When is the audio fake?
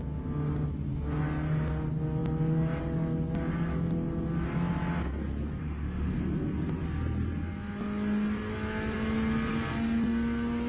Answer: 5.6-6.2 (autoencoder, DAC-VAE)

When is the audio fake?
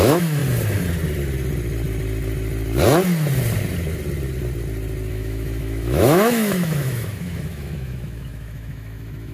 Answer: 0.0-0.4 (autoencoder, DAC-VAE); 5.1-9.3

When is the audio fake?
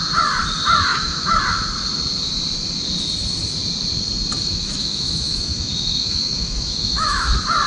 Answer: 0.9-1.4 (autoencoder, DAC-VAE); 4.5-7.3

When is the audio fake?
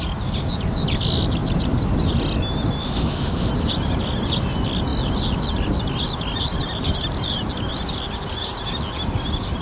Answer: 2.8-3.5 (autoencoder, DAC-VAE)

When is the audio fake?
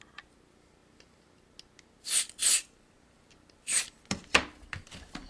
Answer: none